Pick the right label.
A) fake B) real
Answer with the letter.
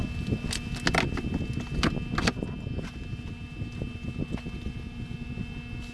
B